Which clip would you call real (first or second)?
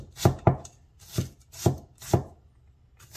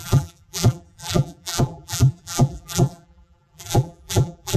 first